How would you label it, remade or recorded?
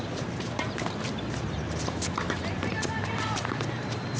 remade